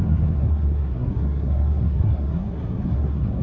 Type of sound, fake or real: fake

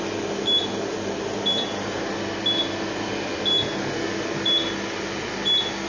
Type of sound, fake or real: real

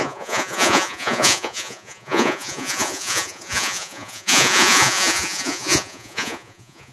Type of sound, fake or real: fake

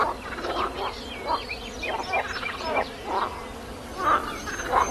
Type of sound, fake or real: real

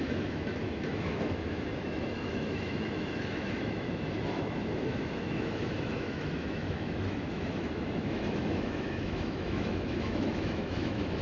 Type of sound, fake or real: fake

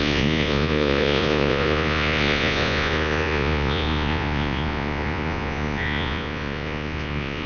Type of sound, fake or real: fake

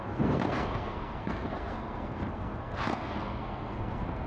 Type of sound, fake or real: fake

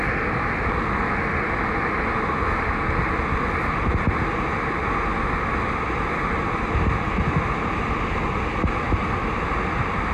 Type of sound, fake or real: real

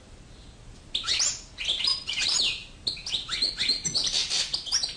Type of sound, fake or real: real